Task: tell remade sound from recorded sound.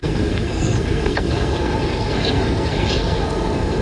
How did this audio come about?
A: remade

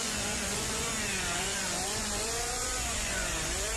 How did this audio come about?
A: remade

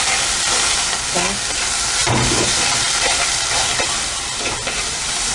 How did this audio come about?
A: recorded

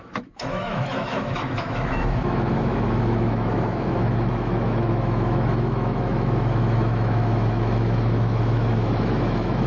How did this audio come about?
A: remade